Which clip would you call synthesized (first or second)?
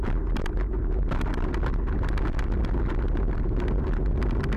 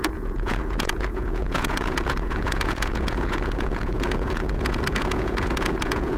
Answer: second